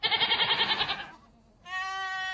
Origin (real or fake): real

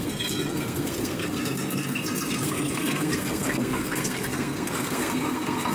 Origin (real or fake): fake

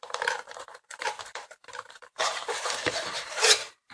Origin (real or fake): fake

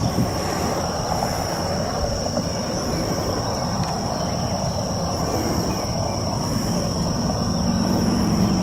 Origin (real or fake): real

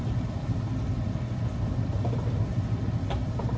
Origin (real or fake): real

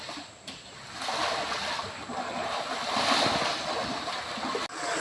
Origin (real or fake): real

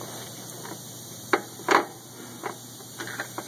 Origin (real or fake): real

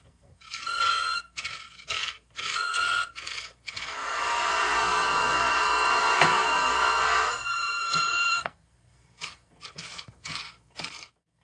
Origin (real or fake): fake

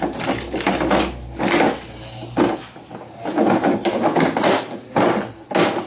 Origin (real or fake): real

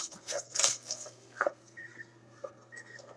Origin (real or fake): fake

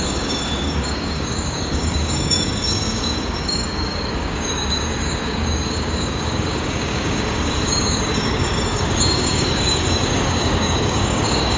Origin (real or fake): fake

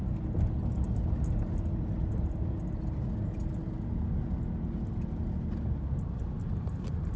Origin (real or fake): real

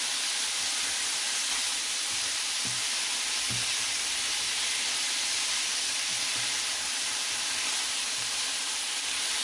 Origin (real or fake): real